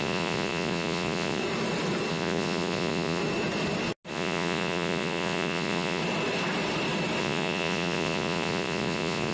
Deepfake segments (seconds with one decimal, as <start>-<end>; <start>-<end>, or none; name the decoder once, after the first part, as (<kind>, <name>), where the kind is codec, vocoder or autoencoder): 0.0-1.4 (vocoder, Vocos); 2.1-3.2; 4.1-6.0; 7.2-9.3